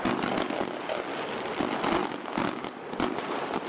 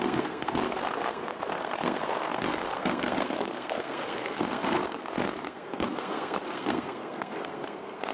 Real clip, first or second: first